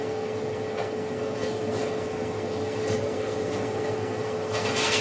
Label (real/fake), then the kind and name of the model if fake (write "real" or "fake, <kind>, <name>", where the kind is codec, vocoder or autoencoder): fake, codec, SNAC